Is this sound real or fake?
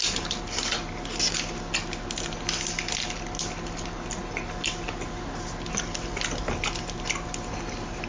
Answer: real